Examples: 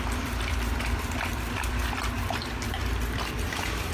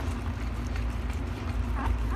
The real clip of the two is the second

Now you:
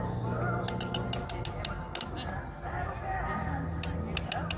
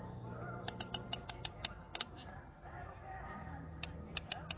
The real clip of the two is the first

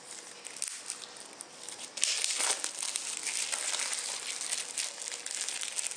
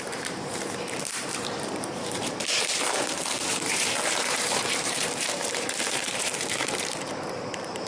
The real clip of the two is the first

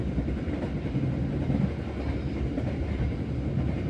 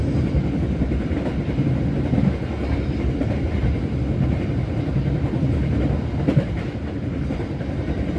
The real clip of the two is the first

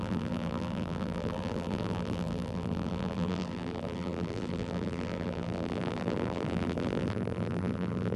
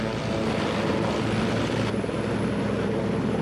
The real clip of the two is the second